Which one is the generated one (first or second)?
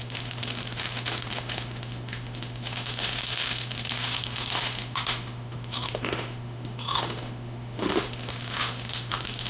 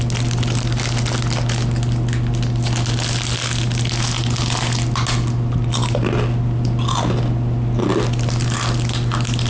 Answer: first